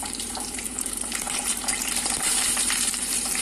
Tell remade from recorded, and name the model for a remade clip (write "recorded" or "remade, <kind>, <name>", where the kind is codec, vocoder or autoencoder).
remade, vocoder, BigVGAN v2